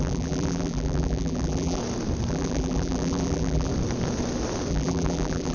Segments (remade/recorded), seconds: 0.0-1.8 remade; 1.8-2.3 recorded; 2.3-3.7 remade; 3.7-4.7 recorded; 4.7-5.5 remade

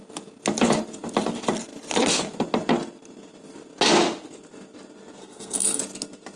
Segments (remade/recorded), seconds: 0.0-5.2 recorded; 5.2-5.8 remade; 5.8-6.4 recorded